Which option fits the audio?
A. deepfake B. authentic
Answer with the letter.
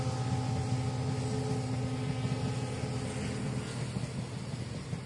B